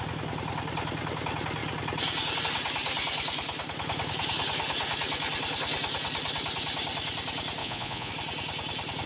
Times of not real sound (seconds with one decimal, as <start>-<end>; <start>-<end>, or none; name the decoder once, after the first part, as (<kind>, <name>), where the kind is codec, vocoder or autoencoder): 7.6-8.1 (vocoder, Vocos)